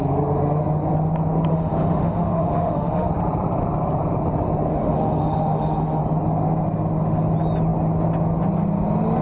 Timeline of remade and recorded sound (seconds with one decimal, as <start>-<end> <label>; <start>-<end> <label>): 0.0-1.5 recorded; 1.5-3.1 remade; 3.1-4.7 recorded; 4.7-6.0 remade; 6.0-9.2 recorded

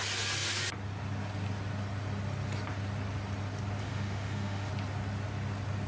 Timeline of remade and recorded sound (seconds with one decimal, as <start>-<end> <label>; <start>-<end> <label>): 0.0-3.8 recorded; 3.8-4.7 remade; 4.7-5.9 recorded

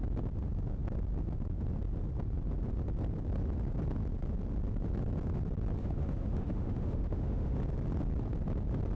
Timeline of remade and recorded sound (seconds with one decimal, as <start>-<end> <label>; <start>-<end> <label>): 0.0-5.8 recorded; 5.8-7.6 remade; 7.6-9.0 recorded

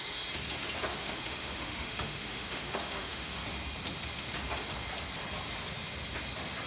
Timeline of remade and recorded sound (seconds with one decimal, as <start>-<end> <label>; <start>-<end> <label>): 0.0-0.9 recorded; 0.9-3.4 remade; 3.4-6.7 recorded

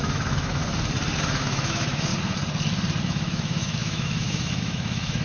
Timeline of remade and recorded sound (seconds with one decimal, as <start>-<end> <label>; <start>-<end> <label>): 0.0-0.6 remade; 0.6-1.2 recorded; 1.2-2.1 remade; 2.1-3.0 recorded; 3.0-5.2 remade